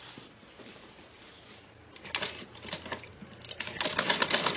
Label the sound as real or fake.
real